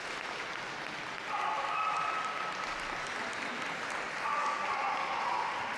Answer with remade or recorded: recorded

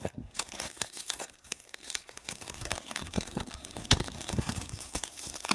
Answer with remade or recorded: remade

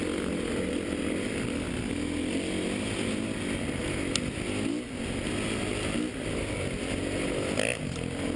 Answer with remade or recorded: recorded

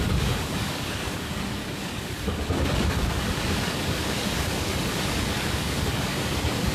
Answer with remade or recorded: remade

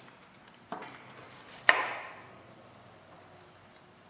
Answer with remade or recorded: recorded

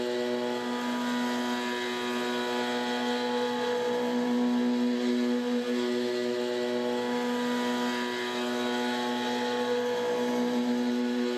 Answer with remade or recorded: recorded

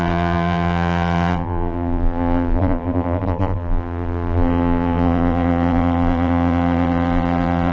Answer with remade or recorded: remade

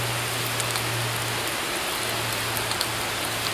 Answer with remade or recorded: recorded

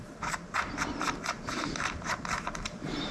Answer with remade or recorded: remade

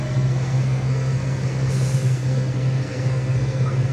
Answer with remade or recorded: remade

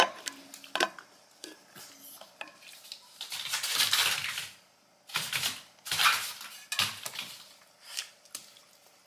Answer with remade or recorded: recorded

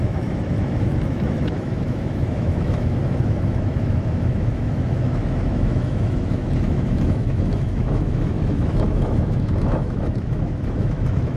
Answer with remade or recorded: remade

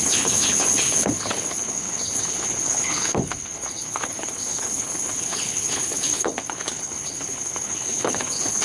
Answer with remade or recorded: remade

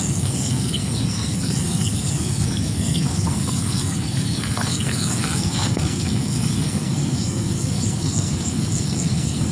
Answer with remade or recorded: remade